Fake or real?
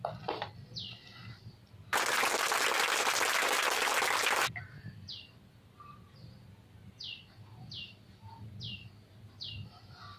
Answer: real